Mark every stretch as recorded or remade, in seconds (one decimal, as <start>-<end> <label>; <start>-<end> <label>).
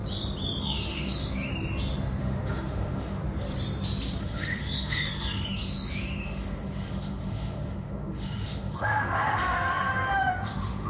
0.0-0.6 recorded; 0.6-1.5 remade; 1.5-2.2 recorded; 2.2-3.2 remade; 3.2-4.2 recorded; 4.2-10.9 remade